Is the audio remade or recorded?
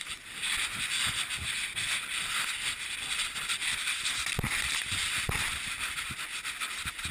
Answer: recorded